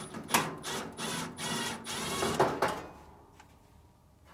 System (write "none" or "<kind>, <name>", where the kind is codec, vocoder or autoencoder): none